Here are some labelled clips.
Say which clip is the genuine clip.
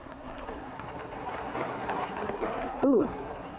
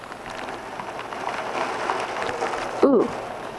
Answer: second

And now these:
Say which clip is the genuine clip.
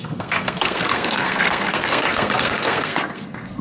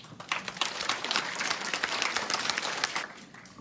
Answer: second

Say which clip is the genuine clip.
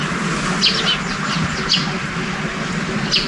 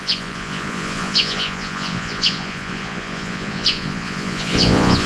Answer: first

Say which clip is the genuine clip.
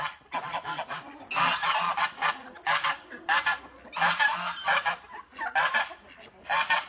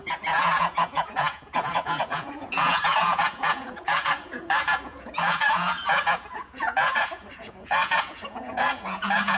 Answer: first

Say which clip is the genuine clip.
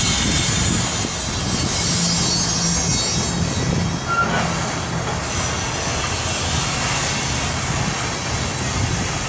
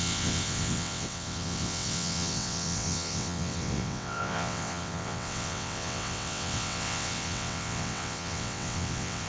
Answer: first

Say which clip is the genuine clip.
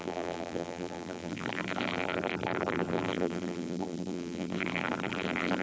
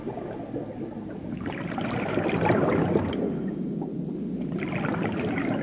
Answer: second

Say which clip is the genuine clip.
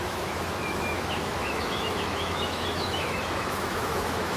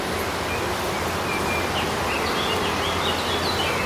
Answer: second